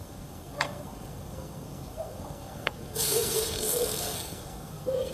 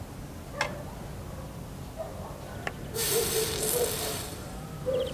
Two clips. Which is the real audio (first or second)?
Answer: second